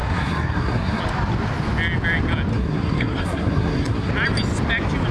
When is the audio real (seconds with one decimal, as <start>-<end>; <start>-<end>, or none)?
1.0-2.5; 4.1-5.1